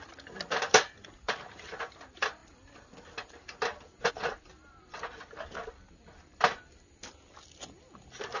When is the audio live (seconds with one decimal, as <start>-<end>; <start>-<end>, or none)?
0.0-8.4

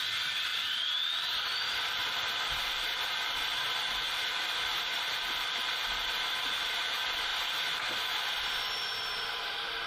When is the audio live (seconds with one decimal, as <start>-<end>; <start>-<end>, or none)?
0.0-4.7; 5.7-9.9

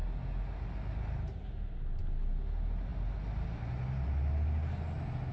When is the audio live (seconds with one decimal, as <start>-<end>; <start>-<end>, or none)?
0.0-5.3

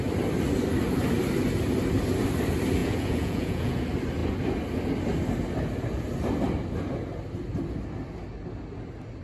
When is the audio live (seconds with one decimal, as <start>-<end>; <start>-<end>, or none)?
0.0-2.8; 3.8-9.2